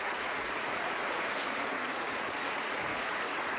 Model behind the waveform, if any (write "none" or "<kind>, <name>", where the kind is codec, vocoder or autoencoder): vocoder, Vocos